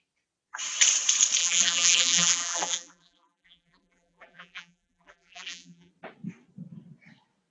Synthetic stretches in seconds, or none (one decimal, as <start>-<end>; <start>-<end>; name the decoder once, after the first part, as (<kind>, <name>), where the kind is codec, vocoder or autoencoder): 1.4-5.9 (vocoder, BigVGAN v2)